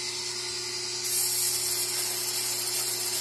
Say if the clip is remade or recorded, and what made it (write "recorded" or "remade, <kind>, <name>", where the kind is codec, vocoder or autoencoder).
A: recorded